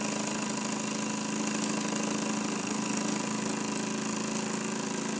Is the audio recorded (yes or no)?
yes